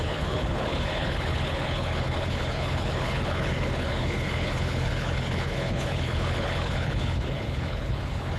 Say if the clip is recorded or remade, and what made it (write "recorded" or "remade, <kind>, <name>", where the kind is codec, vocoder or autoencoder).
remade, codec, HILCodec